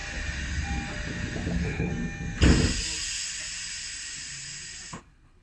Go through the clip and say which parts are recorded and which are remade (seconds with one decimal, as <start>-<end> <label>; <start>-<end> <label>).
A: 0.0-1.5 recorded; 1.5-1.9 remade; 1.9-5.0 recorded; 5.0-5.4 remade